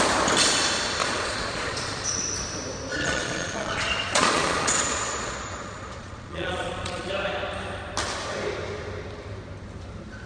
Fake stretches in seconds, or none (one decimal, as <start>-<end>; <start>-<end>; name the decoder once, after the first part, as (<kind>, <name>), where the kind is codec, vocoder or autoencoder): 1.0-2.2 (vocoder, Vocos); 2.9-7.1